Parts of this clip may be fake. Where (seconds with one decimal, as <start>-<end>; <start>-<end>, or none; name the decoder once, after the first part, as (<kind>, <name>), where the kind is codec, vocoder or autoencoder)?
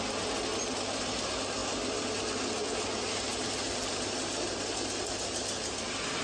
none